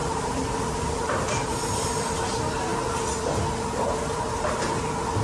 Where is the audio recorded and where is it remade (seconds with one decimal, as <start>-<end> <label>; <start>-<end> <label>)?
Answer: 0.0-1.9 remade; 1.9-5.2 recorded